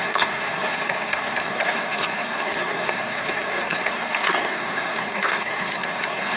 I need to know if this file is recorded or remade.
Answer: remade